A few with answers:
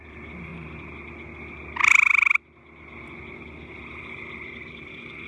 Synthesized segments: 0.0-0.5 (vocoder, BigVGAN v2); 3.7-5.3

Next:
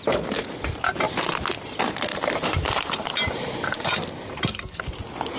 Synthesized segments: 2.1-4.8 (vocoder, BigVGAN v2)

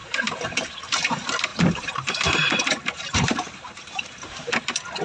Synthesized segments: 0.0-0.9 (vocoder, BigVGAN v2); 1.5-4.5

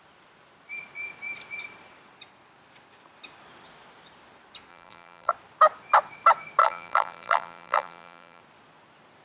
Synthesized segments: 4.7-5.3 (vocoder, BigVGAN v2); 6.6-8.4